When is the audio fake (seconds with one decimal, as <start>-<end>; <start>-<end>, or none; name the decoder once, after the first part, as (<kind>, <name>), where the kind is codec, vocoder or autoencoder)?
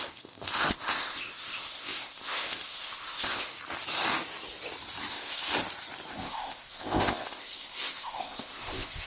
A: 0.0-3.5 (codec, ZipCodec); 5.1-5.5; 6.1-9.1